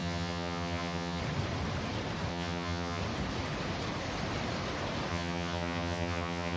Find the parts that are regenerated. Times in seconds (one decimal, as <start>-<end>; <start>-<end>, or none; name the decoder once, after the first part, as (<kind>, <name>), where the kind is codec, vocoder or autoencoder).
0.0-1.2 (vocoder, HiFi-GAN); 2.3-3.0; 5.1-6.6